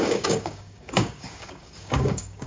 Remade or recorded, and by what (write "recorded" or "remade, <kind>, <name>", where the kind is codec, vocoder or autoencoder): remade, codec, DAC